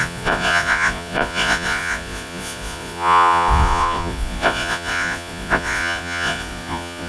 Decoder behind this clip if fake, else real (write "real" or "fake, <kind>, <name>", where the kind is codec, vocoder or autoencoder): fake, vocoder, Vocos